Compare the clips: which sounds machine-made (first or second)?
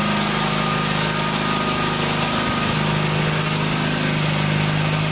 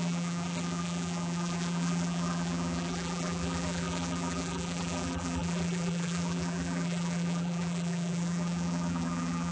second